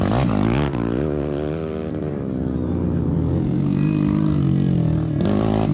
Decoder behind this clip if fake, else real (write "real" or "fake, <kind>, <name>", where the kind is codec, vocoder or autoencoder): real